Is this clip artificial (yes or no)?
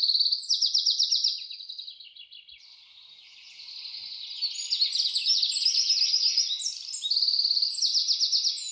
no